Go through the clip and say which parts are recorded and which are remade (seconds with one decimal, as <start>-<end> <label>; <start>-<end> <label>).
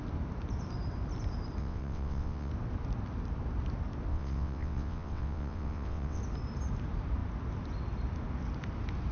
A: 0.0-1.6 recorded; 1.6-2.5 remade; 2.5-4.1 recorded; 4.1-6.2 remade; 6.2-9.1 recorded